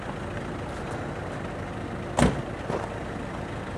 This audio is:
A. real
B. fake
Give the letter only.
A